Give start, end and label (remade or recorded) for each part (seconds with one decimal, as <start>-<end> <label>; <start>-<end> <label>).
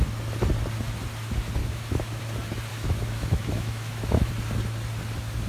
0.0-1.6 recorded; 1.6-2.2 remade; 2.2-2.7 recorded; 2.7-4.3 remade; 4.3-5.5 recorded